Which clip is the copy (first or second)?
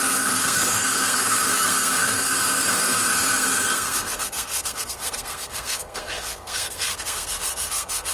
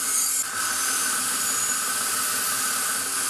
first